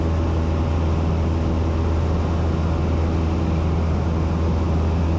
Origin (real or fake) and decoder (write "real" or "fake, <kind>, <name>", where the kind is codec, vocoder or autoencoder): real